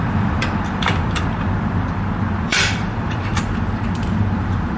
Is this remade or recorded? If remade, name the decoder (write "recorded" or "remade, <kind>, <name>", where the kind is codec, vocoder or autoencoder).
remade, vocoder, BigVGAN v2